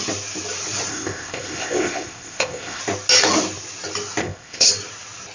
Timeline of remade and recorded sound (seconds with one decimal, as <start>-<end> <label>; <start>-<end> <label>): 0.0-0.9 recorded; 0.9-2.8 remade; 2.8-4.2 recorded; 4.2-4.7 remade; 4.7-5.3 recorded

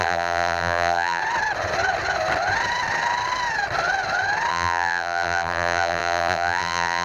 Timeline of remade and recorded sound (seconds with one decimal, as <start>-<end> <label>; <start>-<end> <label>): 0.0-1.2 remade; 1.2-4.5 recorded; 4.5-7.0 remade

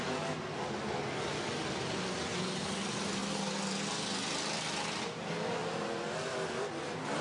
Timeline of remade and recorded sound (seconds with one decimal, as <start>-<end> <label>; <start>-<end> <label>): 0.0-7.2 recorded